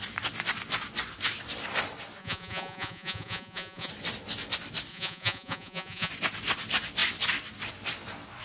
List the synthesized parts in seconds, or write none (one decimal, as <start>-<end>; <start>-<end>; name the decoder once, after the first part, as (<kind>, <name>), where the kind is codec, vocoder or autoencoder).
2.2-3.9 (vocoder, Vocos); 4.9-6.1